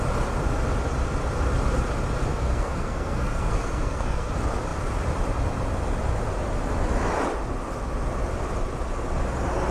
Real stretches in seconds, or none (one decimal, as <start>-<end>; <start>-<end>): 0.0-2.3; 4.3-9.7